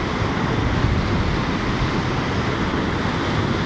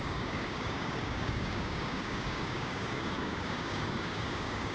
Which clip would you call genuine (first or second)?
first